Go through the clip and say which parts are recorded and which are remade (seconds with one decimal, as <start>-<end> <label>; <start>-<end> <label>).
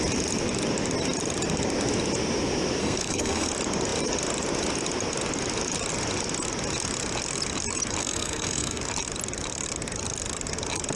0.0-2.8 recorded; 2.8-3.5 remade; 3.5-8.0 recorded; 8.0-8.8 remade; 8.8-11.0 recorded